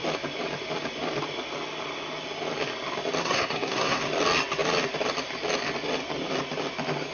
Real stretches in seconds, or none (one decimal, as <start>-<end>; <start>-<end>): 0.0-3.2; 4.0-7.1